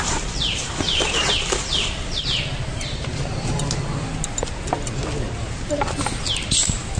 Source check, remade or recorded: recorded